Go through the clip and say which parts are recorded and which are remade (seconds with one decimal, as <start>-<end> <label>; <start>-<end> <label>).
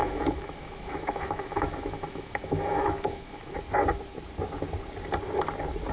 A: 0.0-3.5 remade; 3.5-5.9 recorded